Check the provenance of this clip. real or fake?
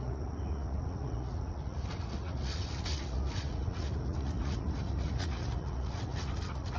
fake